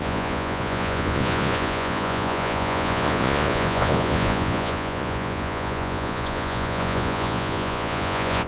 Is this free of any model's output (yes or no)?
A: no